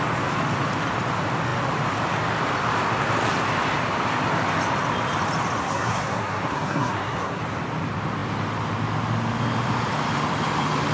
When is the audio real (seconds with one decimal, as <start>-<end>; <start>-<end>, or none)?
0.0-5.6; 7.4-10.9